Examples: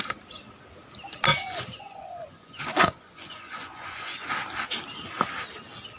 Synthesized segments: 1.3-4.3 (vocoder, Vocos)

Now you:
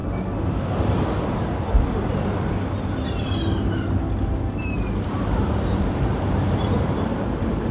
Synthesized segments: 4.6-7.7 (vocoder, BigVGAN v2)

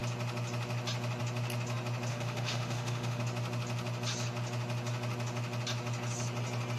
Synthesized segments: 2.1-3.2 (autoencoder, DAC-VAE)

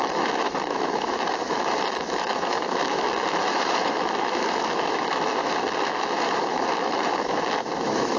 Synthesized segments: 0.0-8.2 (autoencoder, DAC-VAE)

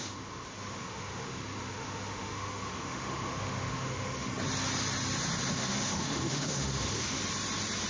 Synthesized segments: 0.0-4.3 (autoencoder, DAC-VAE); 5.5-7.2

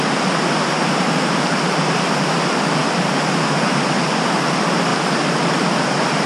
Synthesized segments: none